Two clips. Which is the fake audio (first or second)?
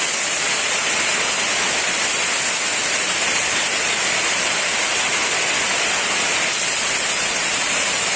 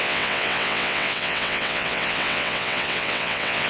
second